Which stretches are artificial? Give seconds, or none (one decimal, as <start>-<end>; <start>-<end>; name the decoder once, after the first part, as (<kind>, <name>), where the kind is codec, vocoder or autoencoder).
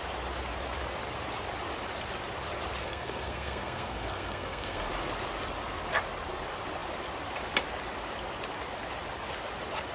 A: 2.8-4.9 (codec, SNAC)